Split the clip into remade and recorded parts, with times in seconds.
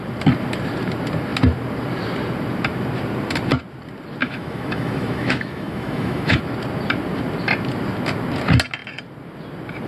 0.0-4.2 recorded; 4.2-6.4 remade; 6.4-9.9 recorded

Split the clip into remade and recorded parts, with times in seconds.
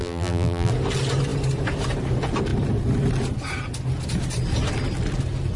0.0-0.7 remade; 0.7-5.6 recorded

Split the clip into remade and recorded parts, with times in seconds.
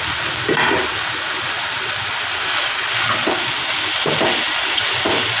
0.0-5.4 recorded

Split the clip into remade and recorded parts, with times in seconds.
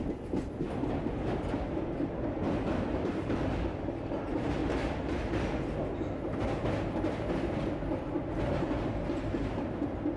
0.0-4.6 recorded; 4.6-5.4 remade; 5.4-10.2 recorded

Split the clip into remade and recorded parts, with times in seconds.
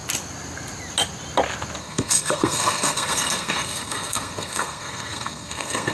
0.0-1.8 recorded; 1.8-5.9 remade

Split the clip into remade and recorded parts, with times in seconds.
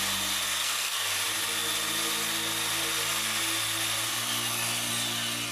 0.0-0.4 recorded; 0.4-1.1 remade; 1.1-5.5 recorded